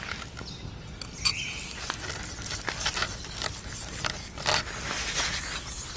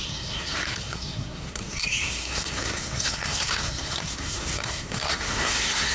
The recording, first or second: first